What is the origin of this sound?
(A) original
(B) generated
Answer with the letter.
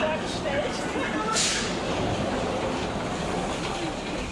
A